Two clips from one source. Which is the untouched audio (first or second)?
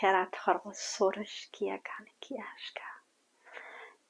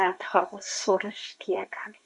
first